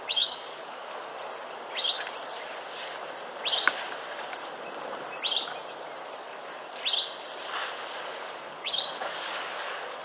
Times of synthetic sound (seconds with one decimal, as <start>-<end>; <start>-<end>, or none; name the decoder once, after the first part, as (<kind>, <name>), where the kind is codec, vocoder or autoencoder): 0.0-1.1 (codec, DAC); 6.0-6.5; 8.3-10.0